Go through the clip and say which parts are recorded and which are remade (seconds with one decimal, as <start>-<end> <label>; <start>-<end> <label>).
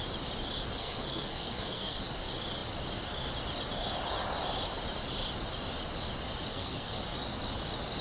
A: 0.0-0.8 recorded; 0.8-2.0 remade; 2.0-6.5 recorded; 6.5-7.0 remade; 7.0-8.0 recorded